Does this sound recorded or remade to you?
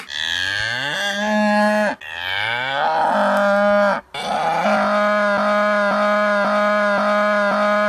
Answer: recorded